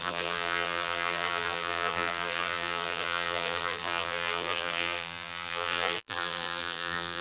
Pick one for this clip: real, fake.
fake